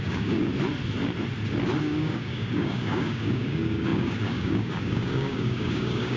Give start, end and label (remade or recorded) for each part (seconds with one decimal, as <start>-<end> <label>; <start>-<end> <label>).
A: 0.0-0.5 remade; 0.5-1.8 recorded; 1.8-6.2 remade